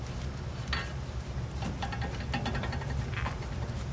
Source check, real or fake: real